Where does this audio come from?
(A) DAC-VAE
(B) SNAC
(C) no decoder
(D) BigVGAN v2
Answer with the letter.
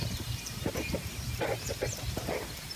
D